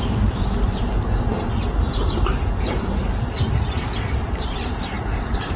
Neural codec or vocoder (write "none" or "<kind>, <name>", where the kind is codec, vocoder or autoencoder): none